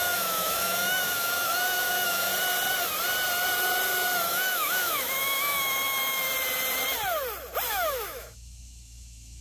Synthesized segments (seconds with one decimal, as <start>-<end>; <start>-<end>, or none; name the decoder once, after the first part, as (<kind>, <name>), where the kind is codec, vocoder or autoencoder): 0.0-2.3 (autoencoder, DAC-VAE); 4.3-6.3; 7.7-9.4